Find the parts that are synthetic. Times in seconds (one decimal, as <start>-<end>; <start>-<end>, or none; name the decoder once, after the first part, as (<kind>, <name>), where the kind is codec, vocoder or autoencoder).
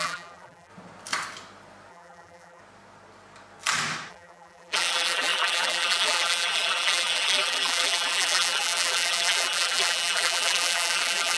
0.0-0.7 (vocoder, BigVGAN v2); 1.9-2.6; 4.1-11.4